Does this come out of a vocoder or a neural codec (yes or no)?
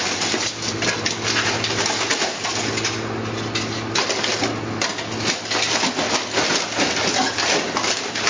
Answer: no